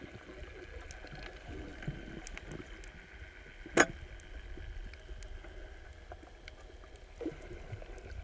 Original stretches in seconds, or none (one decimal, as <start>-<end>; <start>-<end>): 0.0-8.2